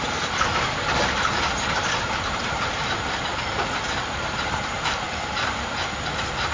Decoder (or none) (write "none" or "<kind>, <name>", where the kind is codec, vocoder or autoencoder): vocoder, BigVGAN v2